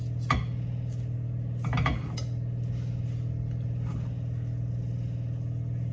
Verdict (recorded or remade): recorded